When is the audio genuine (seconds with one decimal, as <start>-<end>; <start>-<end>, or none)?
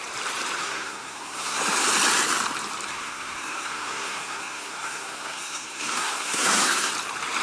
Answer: 0.0-0.6; 1.6-2.9; 6.9-7.4